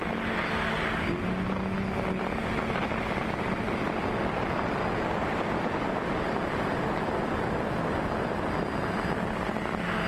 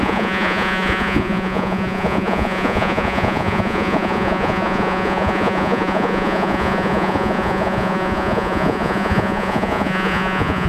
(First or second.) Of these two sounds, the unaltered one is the first